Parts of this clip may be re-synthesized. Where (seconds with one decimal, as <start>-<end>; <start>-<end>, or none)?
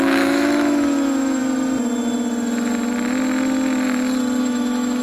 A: 0.0-1.4; 4.4-5.0